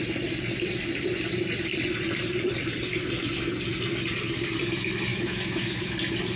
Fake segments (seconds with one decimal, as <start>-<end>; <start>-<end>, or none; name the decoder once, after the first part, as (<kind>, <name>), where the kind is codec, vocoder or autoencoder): 5.1-5.9 (autoencoder, DAC-VAE)